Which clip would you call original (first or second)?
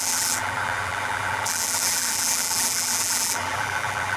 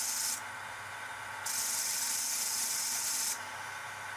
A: second